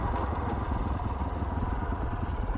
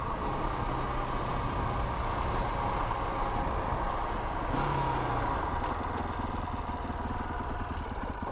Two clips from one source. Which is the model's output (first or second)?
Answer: first